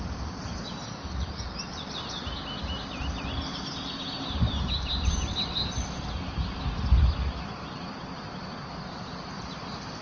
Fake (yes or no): no